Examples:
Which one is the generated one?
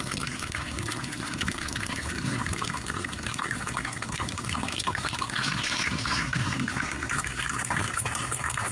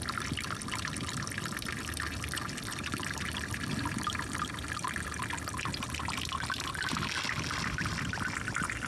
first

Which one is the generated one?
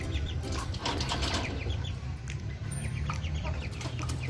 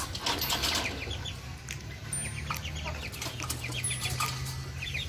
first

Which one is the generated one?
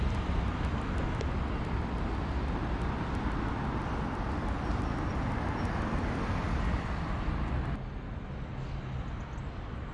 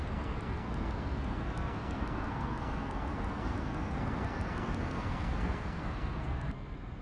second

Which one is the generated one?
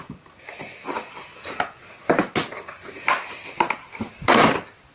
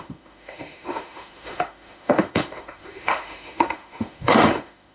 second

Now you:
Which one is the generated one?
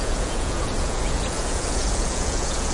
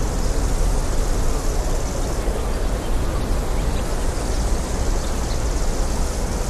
first